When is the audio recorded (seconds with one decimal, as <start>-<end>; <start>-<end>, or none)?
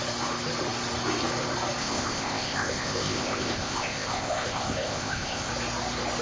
0.0-1.8; 5.5-6.2